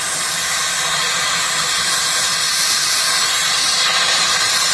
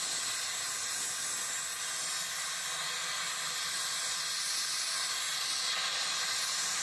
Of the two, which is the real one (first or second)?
second